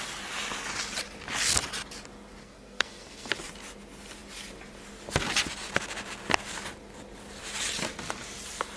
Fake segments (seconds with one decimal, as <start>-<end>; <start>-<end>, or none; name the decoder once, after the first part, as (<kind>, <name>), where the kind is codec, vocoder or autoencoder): 2.4-3.3 (codec, SNAC)